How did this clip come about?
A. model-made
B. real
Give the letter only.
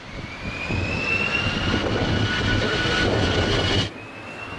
B